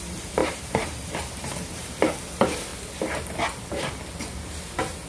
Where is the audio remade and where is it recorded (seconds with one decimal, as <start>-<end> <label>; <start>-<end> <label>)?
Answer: 0.0-0.4 recorded; 0.4-2.0 remade; 2.0-5.1 recorded